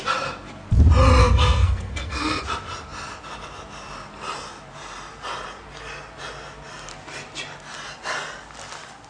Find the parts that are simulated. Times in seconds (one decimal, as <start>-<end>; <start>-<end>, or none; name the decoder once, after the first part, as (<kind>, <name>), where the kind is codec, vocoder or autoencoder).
1.2-2.4 (codec, SNAC)